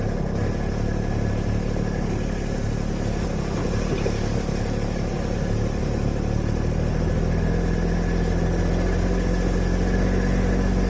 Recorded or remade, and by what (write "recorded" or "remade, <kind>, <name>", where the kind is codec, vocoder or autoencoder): recorded